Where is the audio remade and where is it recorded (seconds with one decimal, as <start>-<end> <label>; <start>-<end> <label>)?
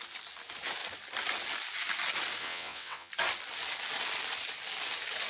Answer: 0.0-2.4 recorded; 2.4-3.1 remade; 3.1-5.3 recorded